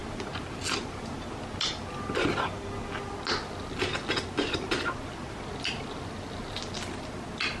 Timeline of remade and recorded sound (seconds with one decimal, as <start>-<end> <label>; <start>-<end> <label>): 0.0-7.6 recorded